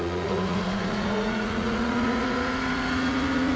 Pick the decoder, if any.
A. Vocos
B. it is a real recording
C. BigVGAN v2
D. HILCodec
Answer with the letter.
A